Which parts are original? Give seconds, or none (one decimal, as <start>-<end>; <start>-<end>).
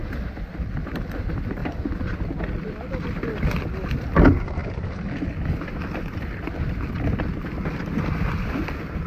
0.0-9.1